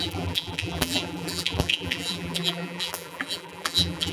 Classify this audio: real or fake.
fake